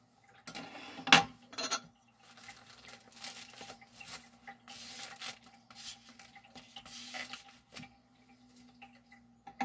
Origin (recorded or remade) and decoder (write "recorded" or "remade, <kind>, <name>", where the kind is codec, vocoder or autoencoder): recorded